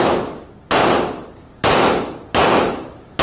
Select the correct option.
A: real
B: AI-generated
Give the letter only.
A